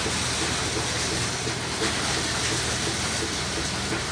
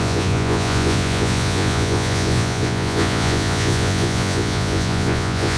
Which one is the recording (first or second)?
first